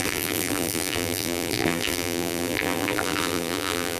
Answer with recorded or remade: remade